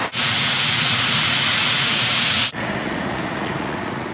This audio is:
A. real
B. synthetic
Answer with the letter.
B